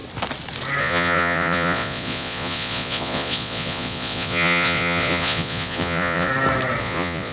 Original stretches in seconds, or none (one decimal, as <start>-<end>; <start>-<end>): 0.0-0.8; 6.3-6.8